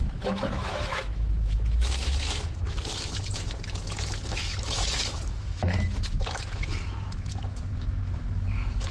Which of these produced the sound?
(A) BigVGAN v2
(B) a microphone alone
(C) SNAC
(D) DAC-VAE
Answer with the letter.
D